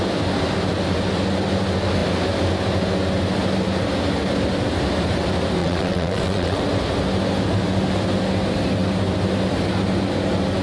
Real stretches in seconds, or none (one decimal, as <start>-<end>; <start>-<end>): 0.0-5.6; 6.6-10.6